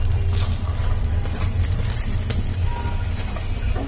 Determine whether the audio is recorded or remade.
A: recorded